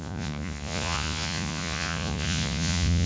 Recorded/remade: remade